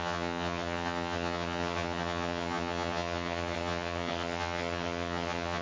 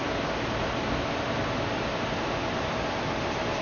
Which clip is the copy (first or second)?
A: first